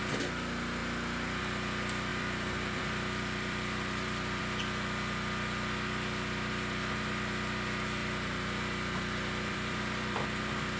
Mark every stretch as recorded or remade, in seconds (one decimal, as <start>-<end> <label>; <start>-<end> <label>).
0.0-2.1 recorded; 2.1-4.4 remade; 4.4-8.0 recorded; 8.0-10.4 remade; 10.4-10.8 recorded